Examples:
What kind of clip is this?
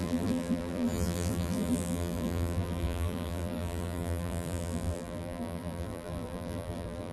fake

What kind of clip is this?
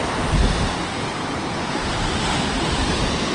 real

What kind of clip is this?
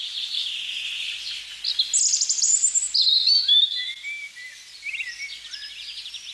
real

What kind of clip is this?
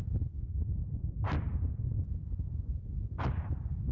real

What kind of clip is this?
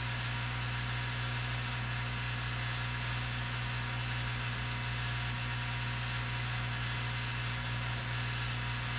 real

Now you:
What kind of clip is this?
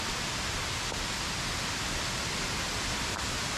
real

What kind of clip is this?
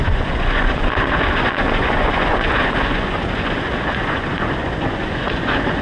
fake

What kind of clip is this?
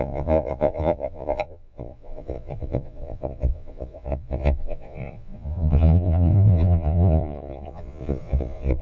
fake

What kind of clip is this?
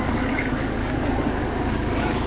fake